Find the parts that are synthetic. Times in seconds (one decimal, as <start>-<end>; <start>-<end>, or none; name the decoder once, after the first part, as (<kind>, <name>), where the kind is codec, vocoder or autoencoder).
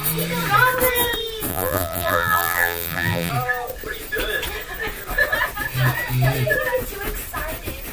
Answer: 1.5-3.3 (vocoder, BigVGAN v2)